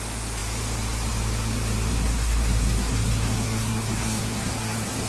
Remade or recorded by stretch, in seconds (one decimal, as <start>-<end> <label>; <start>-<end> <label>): 0.0-1.9 recorded; 1.9-5.1 remade